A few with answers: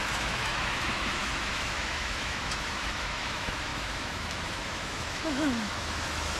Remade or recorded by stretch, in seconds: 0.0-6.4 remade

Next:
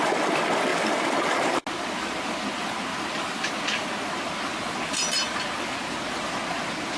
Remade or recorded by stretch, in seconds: 0.0-7.0 recorded

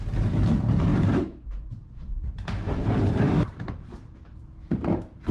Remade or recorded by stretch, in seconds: 0.0-5.3 remade

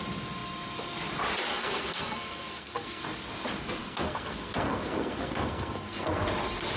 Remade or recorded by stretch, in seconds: 0.0-1.5 recorded; 1.5-3.0 remade; 3.0-3.8 recorded; 3.8-6.2 remade; 6.2-6.8 recorded

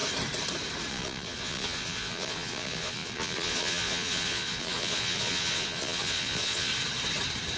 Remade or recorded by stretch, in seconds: 0.0-0.9 recorded; 0.9-6.7 remade; 6.7-7.6 recorded